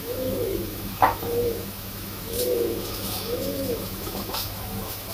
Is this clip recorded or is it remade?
remade